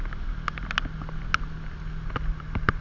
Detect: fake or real real